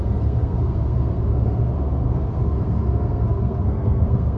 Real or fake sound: fake